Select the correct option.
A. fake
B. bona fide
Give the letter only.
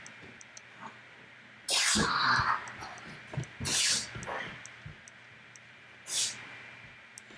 B